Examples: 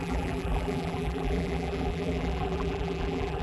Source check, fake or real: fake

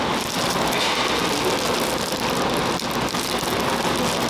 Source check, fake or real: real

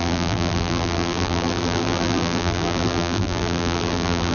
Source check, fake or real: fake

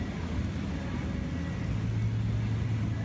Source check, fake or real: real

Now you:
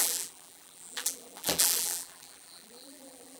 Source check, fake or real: fake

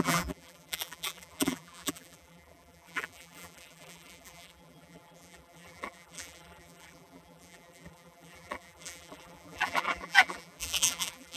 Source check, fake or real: fake